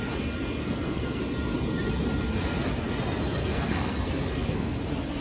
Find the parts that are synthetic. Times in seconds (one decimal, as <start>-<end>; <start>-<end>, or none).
0.6-1.2; 3.4-4.8